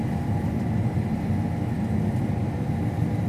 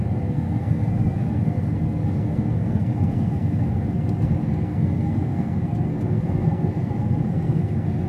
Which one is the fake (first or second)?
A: second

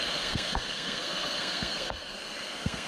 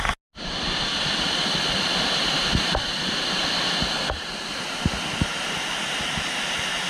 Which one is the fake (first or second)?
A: first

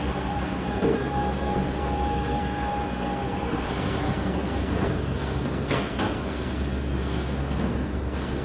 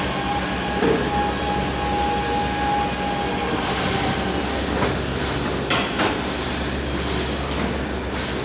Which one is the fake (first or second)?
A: first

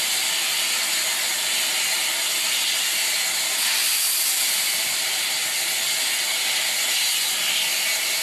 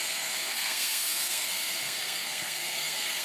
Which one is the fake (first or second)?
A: second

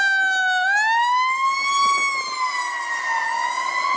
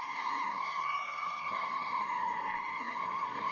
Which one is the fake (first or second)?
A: second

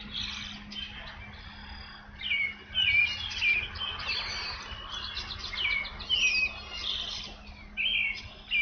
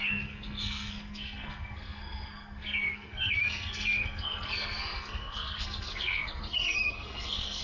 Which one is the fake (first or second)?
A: second